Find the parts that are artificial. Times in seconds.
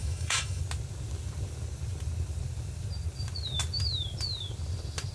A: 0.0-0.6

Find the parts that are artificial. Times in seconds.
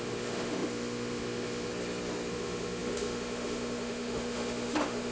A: 0.0-1.7; 2.3-5.1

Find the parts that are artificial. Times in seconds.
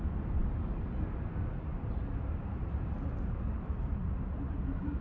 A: none